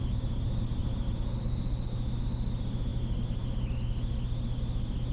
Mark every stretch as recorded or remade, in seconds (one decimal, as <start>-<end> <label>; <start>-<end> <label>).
0.0-5.1 recorded